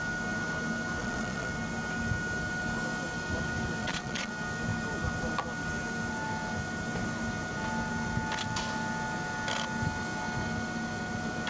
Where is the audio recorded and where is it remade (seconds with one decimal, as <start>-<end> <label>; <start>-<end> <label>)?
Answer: 0.0-1.0 recorded; 1.0-1.5 remade; 1.5-3.8 recorded; 3.8-4.3 remade; 4.3-11.5 recorded